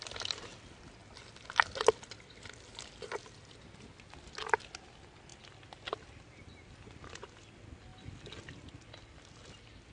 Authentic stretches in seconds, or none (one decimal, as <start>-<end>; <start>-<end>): 0.0-9.9